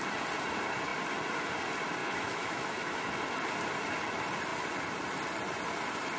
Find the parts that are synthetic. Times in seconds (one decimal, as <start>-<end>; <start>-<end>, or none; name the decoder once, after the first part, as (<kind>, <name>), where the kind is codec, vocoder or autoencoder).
2.0-3.1 (autoencoder, DAC-VAE)